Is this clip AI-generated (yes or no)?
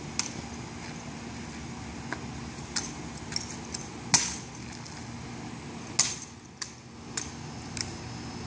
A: no